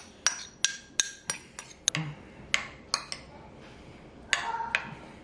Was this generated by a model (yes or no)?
no